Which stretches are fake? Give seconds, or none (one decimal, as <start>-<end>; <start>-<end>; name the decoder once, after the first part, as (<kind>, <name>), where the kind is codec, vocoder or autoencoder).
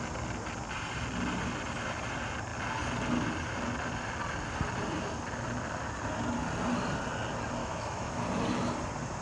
7.6-8.2 (autoencoder, DAC-VAE)